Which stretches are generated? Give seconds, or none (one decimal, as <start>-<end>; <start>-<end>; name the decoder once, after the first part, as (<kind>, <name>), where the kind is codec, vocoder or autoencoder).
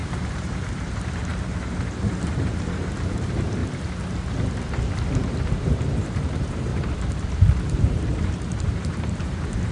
0.0-1.3 (vocoder, BigVGAN v2); 1.9-3.6; 5.7-6.7; 7.7-9.7